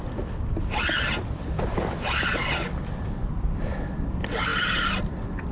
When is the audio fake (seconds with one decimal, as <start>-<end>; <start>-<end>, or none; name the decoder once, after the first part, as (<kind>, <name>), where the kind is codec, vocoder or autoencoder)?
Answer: none